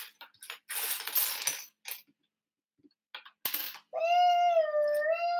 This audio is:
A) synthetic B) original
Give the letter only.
B